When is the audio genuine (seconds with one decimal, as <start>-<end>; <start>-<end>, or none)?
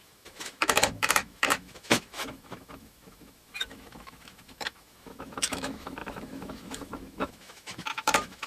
none